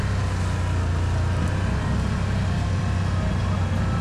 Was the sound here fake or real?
real